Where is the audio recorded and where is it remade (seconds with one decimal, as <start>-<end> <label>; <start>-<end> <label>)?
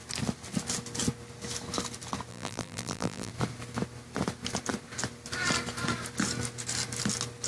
0.0-2.3 recorded; 2.3-3.3 remade; 3.3-7.5 recorded